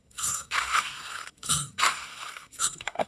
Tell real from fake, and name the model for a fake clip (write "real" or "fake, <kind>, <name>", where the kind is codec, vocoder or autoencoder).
fake, codec, SNAC